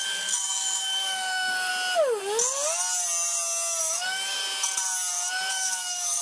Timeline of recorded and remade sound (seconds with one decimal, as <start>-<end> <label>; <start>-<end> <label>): 0.0-1.7 remade; 1.7-3.8 recorded; 3.8-4.4 remade; 4.4-5.5 recorded; 5.5-6.2 remade

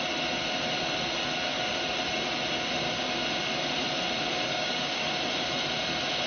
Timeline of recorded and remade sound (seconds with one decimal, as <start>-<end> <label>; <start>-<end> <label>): 0.0-4.5 recorded; 4.5-5.1 remade; 5.1-6.3 recorded

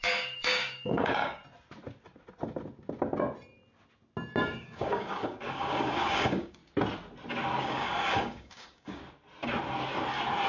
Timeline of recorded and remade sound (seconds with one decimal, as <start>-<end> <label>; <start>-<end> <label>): 0.0-1.4 remade; 1.4-4.4 recorded; 4.4-6.6 remade; 6.6-7.6 recorded; 7.6-9.0 remade; 9.0-10.5 recorded

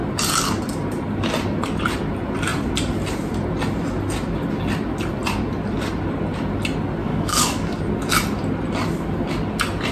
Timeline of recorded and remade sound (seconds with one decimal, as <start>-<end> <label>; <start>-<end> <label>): 0.0-7.0 recorded; 7.0-7.8 remade; 7.8-9.9 recorded